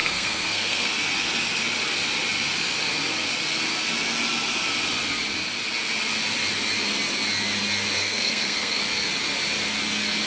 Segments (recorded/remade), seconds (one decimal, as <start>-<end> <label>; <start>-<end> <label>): 0.0-0.9 remade; 0.9-8.0 recorded; 8.0-8.8 remade; 8.8-10.3 recorded